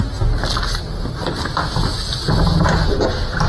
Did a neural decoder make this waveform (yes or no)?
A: no